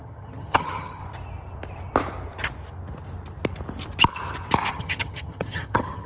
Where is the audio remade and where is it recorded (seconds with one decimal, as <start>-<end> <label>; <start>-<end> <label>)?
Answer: 0.0-1.0 remade; 1.0-4.7 recorded; 4.7-6.1 remade